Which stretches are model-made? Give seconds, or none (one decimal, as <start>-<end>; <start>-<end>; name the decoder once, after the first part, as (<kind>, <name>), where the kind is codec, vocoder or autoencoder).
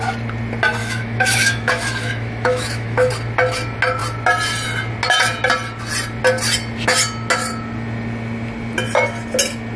0.8-3.1 (autoencoder, DAC-VAE)